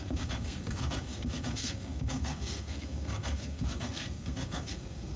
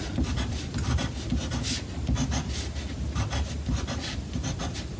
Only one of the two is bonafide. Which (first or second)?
second